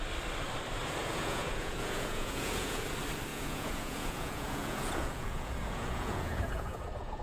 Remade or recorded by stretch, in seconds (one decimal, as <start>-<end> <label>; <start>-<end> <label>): 0.0-1.0 recorded; 1.0-2.8 remade; 2.8-3.3 recorded; 3.3-7.2 remade